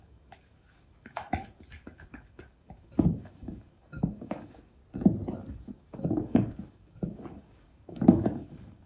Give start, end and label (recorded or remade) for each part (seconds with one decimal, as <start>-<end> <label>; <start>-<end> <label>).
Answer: 0.0-4.8 remade; 4.8-5.5 recorded; 5.5-8.9 remade